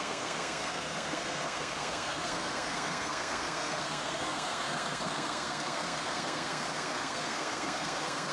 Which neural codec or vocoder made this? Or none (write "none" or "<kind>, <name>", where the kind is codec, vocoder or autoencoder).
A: codec, SNAC